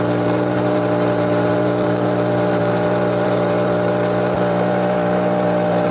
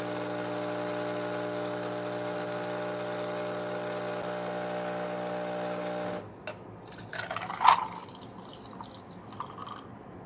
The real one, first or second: second